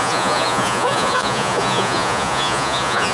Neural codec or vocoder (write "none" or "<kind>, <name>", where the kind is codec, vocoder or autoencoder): vocoder, Vocos